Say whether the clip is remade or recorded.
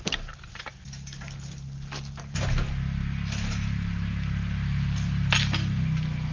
recorded